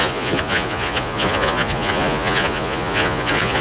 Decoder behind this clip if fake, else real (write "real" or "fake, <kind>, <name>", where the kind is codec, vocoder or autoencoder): fake, vocoder, Vocos